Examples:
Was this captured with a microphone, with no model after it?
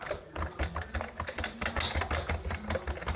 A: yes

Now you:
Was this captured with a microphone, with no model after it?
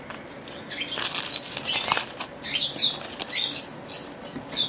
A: yes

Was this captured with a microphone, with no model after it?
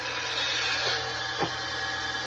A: yes